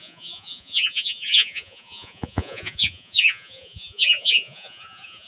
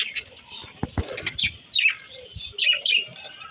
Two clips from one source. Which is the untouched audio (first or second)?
second